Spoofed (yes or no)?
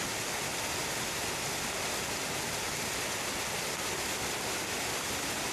no